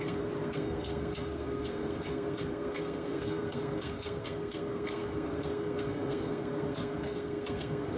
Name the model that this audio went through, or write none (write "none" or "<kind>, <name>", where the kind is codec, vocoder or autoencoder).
codec, SNAC